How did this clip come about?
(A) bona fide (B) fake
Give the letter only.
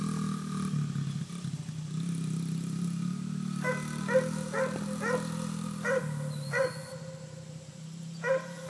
A